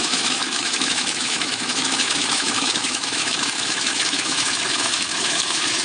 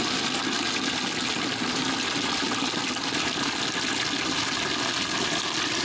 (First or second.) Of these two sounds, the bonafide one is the second